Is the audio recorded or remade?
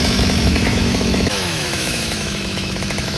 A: remade